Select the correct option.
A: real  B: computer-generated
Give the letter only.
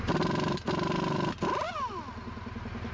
A